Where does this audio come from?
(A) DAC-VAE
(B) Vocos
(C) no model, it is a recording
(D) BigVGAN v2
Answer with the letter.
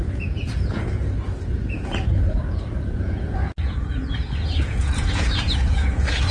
B